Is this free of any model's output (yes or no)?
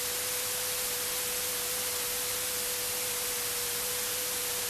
yes